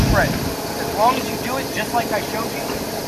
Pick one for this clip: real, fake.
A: real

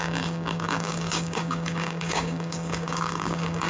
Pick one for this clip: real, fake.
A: fake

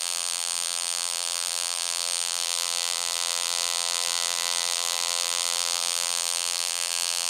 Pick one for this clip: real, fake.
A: fake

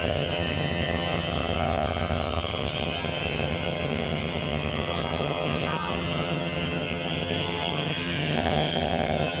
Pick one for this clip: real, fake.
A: fake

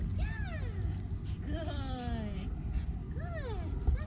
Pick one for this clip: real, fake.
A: real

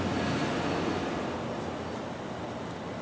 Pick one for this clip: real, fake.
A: real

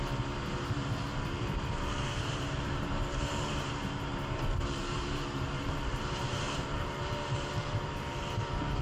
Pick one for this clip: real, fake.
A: fake